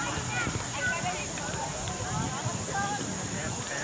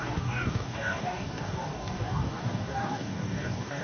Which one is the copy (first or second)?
second